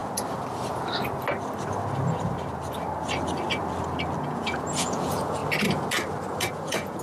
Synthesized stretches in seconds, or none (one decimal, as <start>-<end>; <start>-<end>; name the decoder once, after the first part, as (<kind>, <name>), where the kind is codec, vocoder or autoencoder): 4.2-5.4 (vocoder, Vocos); 6.5-7.0